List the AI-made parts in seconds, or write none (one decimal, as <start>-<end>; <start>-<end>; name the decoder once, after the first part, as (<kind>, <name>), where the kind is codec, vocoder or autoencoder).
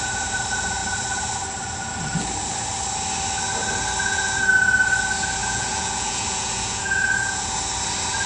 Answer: 5.4-7.7 (vocoder, Vocos)